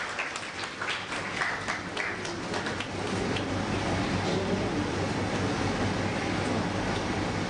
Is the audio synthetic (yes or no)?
no